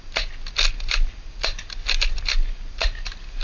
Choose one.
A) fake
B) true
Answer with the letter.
B